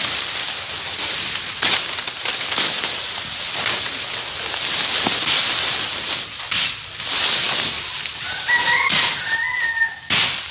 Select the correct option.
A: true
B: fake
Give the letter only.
A